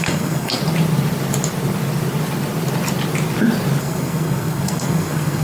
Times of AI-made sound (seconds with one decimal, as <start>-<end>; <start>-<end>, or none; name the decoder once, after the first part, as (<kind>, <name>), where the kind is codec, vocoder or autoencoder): 0.0-0.6 (codec, SNAC); 3.8-5.4